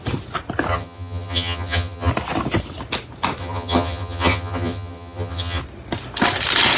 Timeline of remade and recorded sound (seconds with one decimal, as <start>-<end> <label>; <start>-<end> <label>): 0.0-0.7 recorded; 0.7-2.1 remade; 2.1-3.4 recorded; 3.4-5.6 remade; 5.6-6.8 recorded